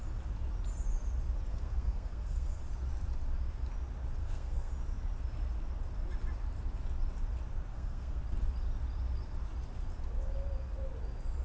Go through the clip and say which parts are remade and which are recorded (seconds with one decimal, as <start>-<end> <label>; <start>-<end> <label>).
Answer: 0.0-1.5 recorded; 1.5-2.6 remade; 2.6-4.2 recorded; 4.2-4.7 remade; 4.7-7.7 recorded; 7.7-8.2 remade; 8.2-11.4 recorded